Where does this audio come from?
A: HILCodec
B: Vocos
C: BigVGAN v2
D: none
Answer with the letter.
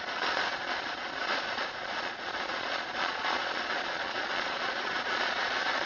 B